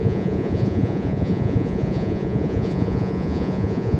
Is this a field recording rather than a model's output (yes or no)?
no